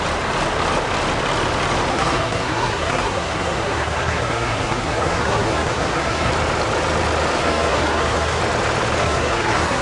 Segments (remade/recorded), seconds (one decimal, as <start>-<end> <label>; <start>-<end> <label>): 0.0-1.9 recorded; 1.9-6.3 remade; 6.3-7.4 recorded; 7.4-8.4 remade; 8.4-9.0 recorded; 9.0-9.8 remade